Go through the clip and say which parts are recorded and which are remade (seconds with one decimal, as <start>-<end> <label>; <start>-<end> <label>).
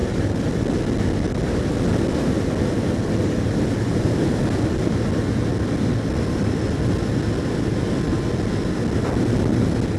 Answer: 0.0-0.5 remade; 0.5-3.9 recorded; 3.9-4.4 remade; 4.4-10.0 recorded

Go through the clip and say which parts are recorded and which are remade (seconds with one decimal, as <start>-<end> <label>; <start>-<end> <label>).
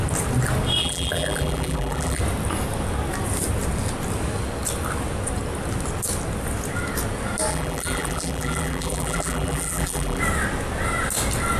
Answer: 0.0-0.8 recorded; 0.8-2.2 remade; 2.2-7.5 recorded; 7.5-10.2 remade; 10.2-11.6 recorded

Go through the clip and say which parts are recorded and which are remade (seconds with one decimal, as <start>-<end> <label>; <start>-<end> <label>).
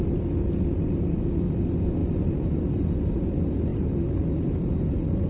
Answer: 0.0-2.0 recorded; 2.0-3.3 remade; 3.3-3.7 recorded; 3.7-5.3 remade